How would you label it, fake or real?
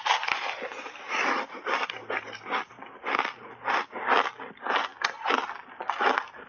real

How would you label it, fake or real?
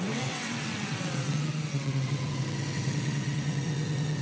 fake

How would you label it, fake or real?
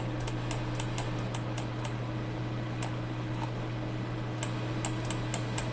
real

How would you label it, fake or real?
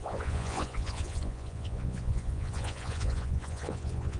fake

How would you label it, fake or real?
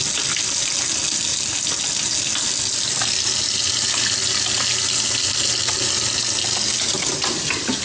real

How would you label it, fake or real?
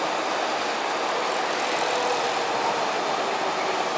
real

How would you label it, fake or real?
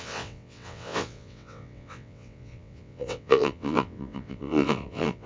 fake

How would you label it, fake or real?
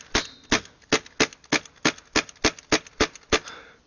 real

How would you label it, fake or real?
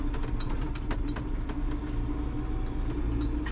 real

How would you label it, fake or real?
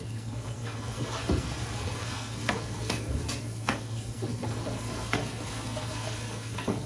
fake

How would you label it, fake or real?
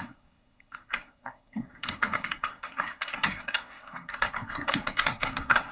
fake